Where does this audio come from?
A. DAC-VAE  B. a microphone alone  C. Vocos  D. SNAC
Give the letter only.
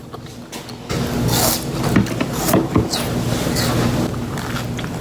B